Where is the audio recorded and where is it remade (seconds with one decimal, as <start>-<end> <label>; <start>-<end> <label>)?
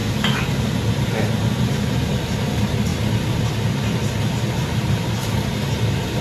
0.0-6.2 recorded